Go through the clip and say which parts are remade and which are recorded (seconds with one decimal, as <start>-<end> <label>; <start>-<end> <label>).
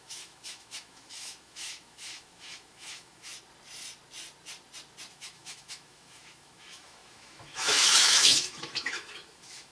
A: 0.0-3.3 remade; 3.3-5.1 recorded; 5.1-9.7 remade